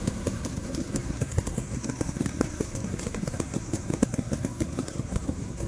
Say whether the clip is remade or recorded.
remade